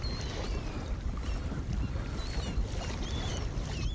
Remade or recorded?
recorded